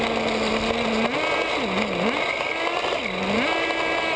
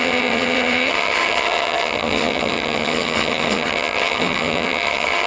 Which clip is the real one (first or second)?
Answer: first